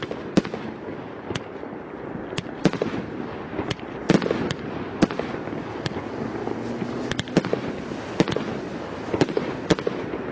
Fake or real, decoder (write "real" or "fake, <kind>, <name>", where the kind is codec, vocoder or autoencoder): real